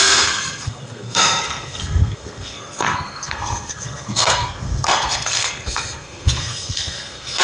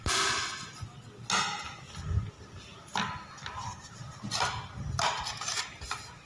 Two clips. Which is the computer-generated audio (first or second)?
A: first